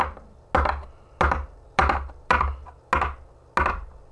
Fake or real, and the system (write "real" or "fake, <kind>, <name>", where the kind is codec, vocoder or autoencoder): real